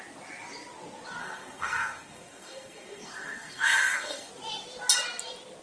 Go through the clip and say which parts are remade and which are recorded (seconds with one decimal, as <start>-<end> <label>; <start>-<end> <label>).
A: 0.0-1.2 recorded; 1.2-4.3 remade; 4.3-5.6 recorded